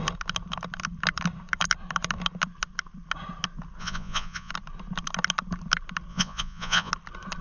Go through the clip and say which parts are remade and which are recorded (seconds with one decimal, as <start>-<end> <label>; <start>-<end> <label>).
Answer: 0.0-3.8 recorded; 3.8-4.5 remade; 4.5-6.1 recorded; 6.1-6.9 remade; 6.9-7.4 recorded